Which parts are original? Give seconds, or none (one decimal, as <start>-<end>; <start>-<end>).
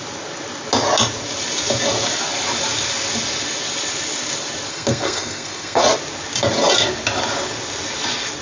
0.0-4.7; 5.8-8.4